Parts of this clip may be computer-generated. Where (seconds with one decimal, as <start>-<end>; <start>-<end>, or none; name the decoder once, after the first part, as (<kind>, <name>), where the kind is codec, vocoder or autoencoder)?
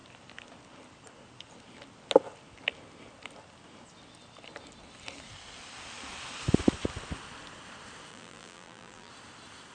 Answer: 8.1-9.1 (vocoder, BigVGAN v2)